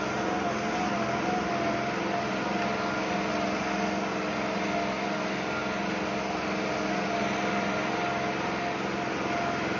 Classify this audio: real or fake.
real